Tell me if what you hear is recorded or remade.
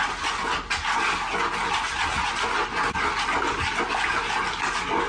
recorded